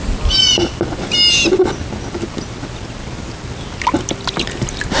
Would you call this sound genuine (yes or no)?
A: yes